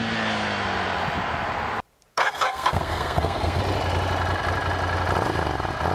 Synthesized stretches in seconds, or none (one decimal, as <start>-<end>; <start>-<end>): 2.1-3.6